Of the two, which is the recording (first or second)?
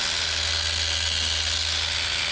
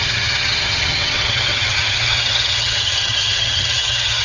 first